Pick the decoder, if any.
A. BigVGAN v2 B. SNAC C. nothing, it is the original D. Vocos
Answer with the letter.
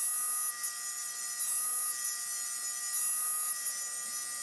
C